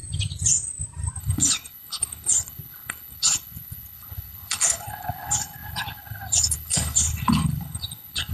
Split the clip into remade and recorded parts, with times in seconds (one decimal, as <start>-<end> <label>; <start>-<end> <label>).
0.0-1.2 recorded; 1.2-8.3 remade